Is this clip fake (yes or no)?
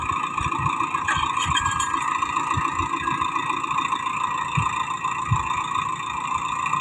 no